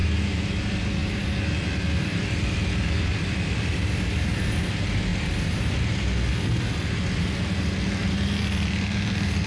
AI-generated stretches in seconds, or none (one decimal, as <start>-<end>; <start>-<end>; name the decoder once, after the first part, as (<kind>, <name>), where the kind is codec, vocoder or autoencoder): 0.5-6.3 (vocoder, BigVGAN v2); 7.4-9.5